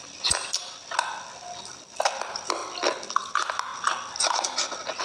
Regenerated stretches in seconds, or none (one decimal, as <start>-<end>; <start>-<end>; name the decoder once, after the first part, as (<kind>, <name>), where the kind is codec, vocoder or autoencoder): none